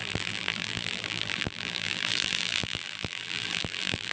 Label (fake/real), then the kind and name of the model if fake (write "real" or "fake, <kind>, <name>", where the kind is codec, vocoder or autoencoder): fake, vocoder, BigVGAN v2